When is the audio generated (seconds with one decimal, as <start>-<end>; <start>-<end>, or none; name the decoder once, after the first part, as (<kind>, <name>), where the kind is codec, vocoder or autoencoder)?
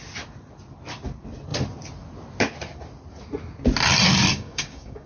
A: 4.3-5.1 (codec, DAC)